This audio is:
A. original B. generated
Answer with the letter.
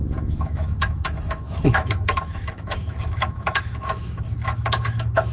B